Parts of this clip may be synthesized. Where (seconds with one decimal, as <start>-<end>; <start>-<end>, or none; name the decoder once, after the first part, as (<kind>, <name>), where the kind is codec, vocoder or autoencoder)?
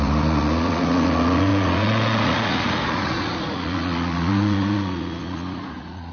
0.0-6.1 (vocoder, Vocos)